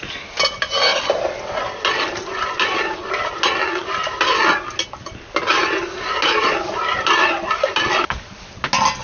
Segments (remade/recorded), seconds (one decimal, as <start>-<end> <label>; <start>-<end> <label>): 0.0-9.0 recorded